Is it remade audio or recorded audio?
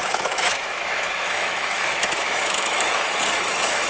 remade